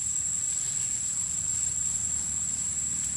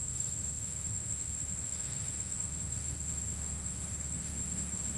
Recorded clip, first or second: first